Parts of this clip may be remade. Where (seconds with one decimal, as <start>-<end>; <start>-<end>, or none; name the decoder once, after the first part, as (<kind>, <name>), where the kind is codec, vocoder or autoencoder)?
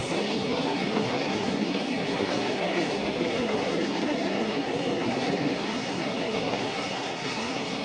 0.0-7.8 (codec, SNAC)